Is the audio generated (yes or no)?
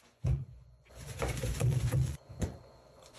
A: yes